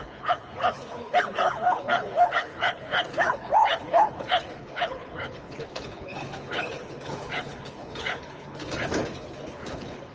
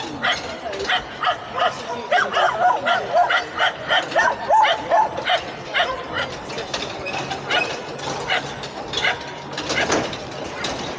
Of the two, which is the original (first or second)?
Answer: second